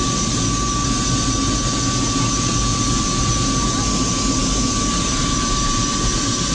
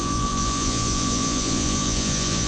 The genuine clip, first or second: first